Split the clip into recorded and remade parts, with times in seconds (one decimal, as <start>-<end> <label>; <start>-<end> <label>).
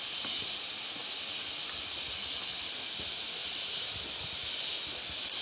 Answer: 0.0-3.4 recorded; 3.4-4.4 remade; 4.4-5.4 recorded